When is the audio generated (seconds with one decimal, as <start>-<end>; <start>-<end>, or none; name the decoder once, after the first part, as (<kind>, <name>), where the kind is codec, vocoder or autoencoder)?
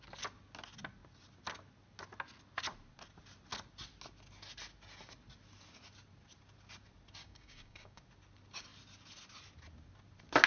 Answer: 7.2-8.0 (codec, DAC)